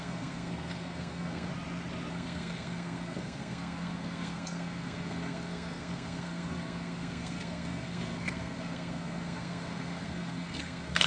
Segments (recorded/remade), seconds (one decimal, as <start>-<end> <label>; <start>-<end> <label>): 0.0-1.5 remade; 1.5-2.1 recorded; 2.1-11.1 remade